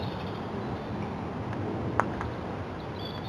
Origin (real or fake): real